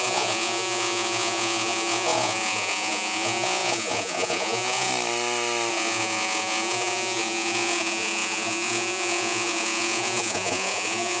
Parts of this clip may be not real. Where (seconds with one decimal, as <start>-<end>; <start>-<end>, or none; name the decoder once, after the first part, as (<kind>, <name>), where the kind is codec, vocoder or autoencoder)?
0.0-4.9 (vocoder, Vocos); 5.7-11.2